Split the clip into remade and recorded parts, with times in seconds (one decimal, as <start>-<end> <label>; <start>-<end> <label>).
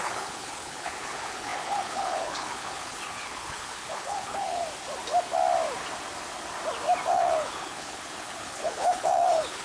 0.0-4.6 remade; 4.6-7.1 recorded; 7.1-9.6 remade